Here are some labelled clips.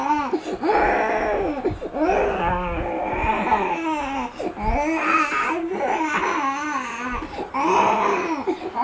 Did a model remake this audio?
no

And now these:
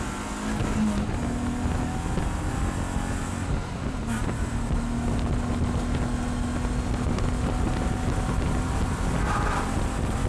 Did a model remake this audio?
no